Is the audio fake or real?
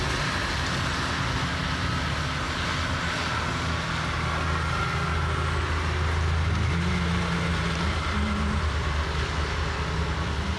real